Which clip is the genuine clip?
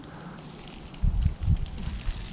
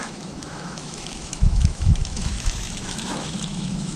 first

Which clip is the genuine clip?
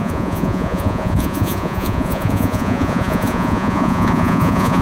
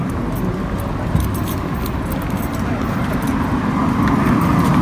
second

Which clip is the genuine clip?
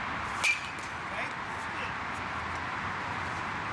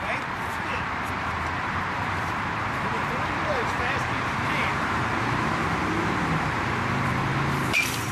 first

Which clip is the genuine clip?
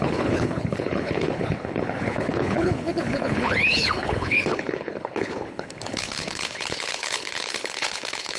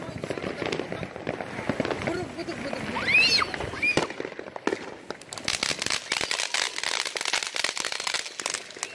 second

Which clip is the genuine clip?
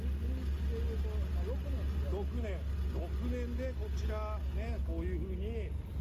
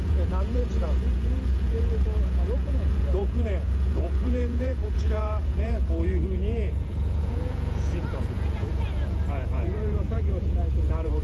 first